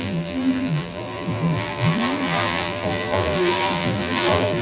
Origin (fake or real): fake